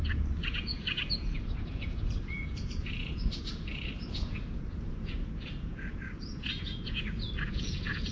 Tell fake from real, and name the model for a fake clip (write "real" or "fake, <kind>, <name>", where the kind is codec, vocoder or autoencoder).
fake, vocoder, Vocos